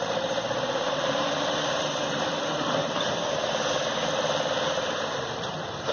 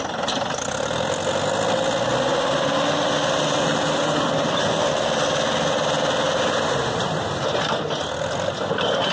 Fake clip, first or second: first